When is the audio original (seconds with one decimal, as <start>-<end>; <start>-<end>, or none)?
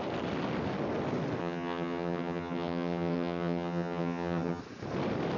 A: 0.0-1.4; 4.6-5.4